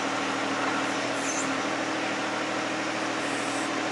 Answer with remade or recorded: recorded